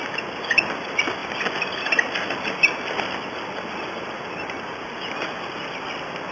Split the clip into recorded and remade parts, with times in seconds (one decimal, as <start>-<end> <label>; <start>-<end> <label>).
0.0-6.3 recorded